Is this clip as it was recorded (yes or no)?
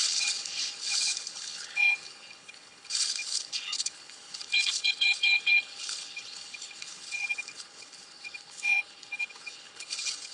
no